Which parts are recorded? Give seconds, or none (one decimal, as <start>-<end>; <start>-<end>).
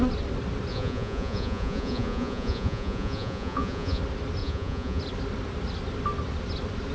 0.0-0.7; 4.0-4.4; 5.0-6.9